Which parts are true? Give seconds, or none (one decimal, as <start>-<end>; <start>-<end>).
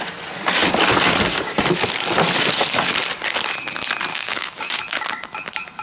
0.0-4.1; 4.8-5.8